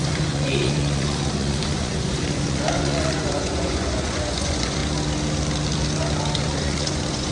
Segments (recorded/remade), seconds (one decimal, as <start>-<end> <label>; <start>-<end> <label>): 0.0-4.8 remade; 4.8-6.4 recorded; 6.4-7.3 remade